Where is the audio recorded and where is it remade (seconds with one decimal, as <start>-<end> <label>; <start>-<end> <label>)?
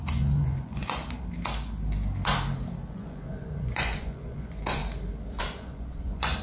0.0-1.0 remade; 1.0-2.9 recorded; 2.9-4.8 remade; 4.8-5.4 recorded; 5.4-6.4 remade